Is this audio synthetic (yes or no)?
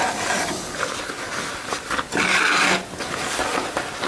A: no